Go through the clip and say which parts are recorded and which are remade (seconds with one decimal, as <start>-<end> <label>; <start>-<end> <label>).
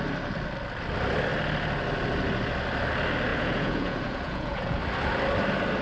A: 0.0-3.3 recorded; 3.3-4.8 remade; 4.8-5.8 recorded